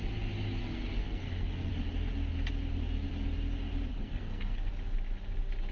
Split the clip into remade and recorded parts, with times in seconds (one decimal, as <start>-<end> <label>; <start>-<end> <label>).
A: 0.0-0.6 recorded; 0.6-1.7 remade; 1.7-4.0 recorded; 4.0-4.7 remade; 4.7-5.7 recorded